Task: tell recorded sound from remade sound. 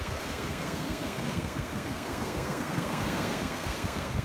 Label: remade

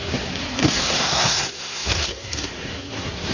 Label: remade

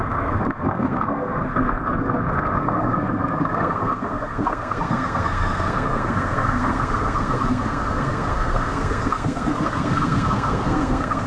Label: remade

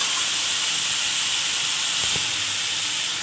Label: recorded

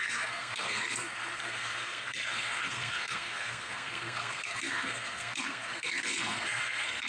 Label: remade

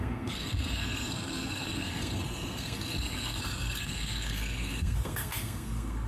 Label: remade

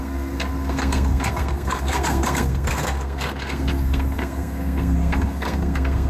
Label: remade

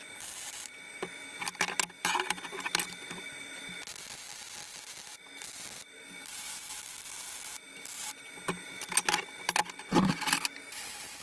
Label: recorded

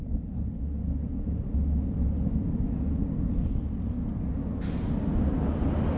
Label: recorded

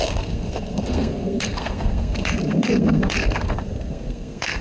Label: remade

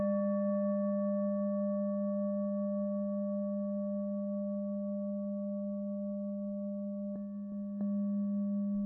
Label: recorded